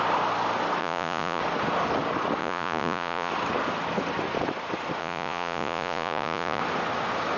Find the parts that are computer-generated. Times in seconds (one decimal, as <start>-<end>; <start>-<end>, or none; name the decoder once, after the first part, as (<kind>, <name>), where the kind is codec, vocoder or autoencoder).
0.8-1.4 (vocoder, Vocos); 2.4-3.3; 5.0-6.6